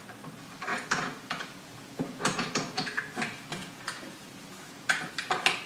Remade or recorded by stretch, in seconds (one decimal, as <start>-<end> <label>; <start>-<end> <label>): 0.0-0.7 recorded; 0.7-3.0 remade; 3.0-3.6 recorded; 3.6-5.1 remade; 5.1-5.7 recorded